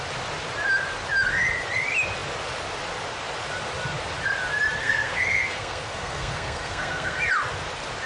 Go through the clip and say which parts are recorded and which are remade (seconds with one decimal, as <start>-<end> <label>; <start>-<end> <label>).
0.0-4.8 recorded; 4.8-7.2 remade; 7.2-8.1 recorded